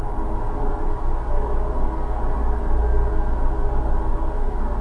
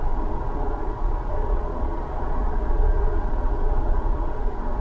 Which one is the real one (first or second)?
first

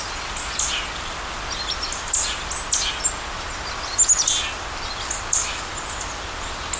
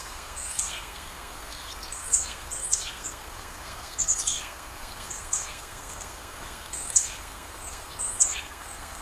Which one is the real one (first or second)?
first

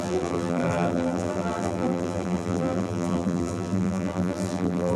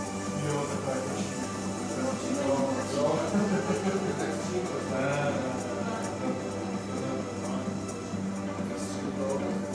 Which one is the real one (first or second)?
second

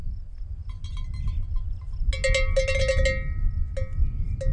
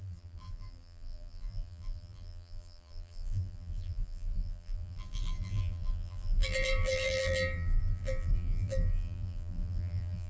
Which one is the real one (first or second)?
first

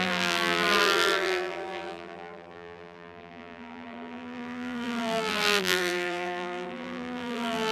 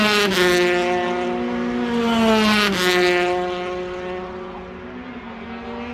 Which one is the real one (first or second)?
second